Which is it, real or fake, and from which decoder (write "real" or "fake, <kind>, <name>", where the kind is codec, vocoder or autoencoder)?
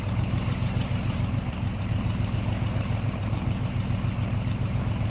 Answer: fake, vocoder, BigVGAN v2